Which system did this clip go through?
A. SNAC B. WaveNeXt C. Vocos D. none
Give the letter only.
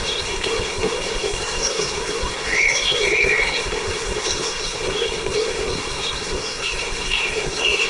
A